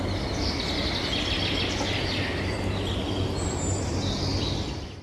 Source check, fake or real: real